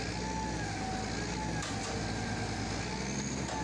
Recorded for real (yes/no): yes